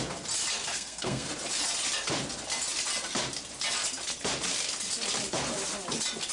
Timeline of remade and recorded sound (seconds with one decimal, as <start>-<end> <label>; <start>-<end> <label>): 0.0-0.7 recorded; 0.7-1.3 remade; 1.3-6.3 recorded